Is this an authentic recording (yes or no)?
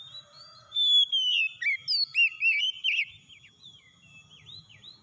yes